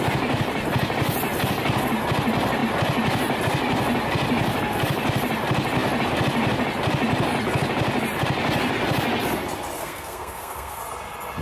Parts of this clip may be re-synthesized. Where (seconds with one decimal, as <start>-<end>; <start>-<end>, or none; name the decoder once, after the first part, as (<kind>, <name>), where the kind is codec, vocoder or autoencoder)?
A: 9.8-10.8 (codec, SNAC)